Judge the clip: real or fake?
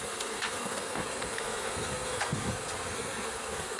fake